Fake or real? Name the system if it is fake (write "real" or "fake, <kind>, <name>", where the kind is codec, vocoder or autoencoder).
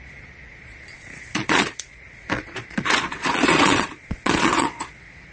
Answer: fake, vocoder, Vocos